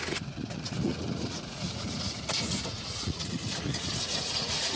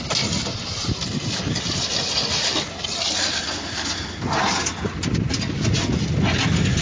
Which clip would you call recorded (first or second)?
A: second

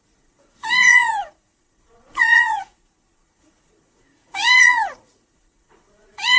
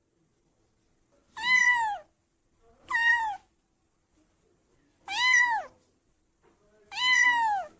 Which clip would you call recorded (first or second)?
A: second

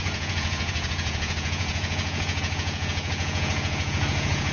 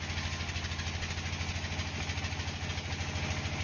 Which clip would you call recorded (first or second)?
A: second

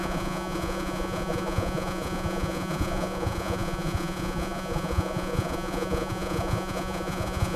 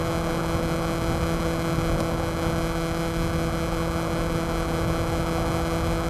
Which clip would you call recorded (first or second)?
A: second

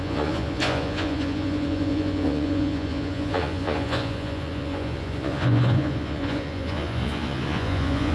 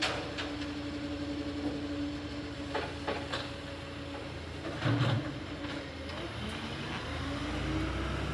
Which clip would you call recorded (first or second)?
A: second